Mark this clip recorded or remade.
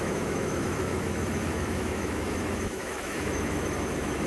remade